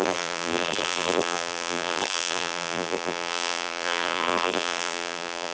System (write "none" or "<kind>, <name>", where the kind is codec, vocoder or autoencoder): vocoder, BigVGAN v2